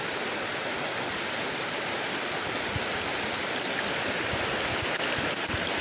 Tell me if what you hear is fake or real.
real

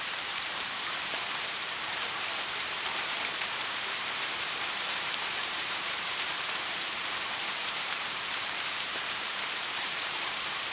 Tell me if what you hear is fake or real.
fake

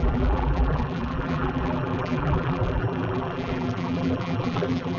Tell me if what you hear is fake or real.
fake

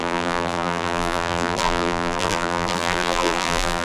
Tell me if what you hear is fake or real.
fake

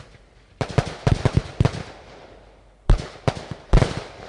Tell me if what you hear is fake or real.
fake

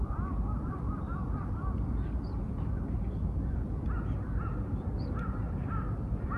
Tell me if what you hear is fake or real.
fake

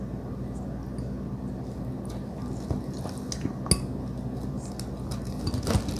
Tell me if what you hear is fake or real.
real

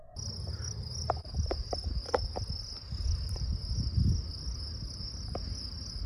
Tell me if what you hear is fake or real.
real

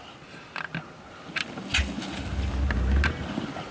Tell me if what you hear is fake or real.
real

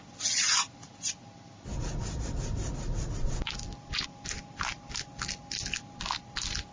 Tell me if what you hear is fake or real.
real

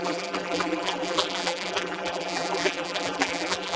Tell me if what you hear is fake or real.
fake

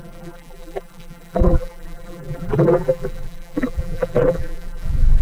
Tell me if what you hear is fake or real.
fake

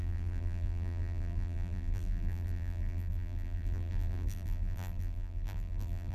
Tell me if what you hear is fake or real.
fake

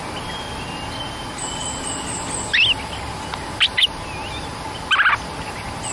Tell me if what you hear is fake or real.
real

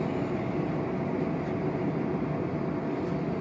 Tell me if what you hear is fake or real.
real